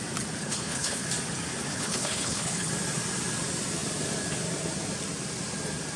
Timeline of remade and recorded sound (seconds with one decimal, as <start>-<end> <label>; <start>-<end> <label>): 0.0-0.4 recorded; 0.4-1.0 remade; 1.0-1.7 recorded; 1.7-2.7 remade; 2.7-6.0 recorded